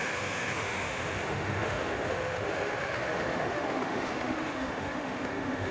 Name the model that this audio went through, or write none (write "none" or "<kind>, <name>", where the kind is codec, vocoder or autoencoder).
autoencoder, DAC-VAE